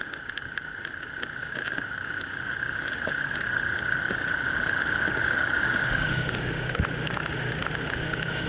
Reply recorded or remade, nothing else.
remade